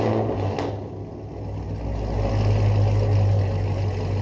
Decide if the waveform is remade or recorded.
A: recorded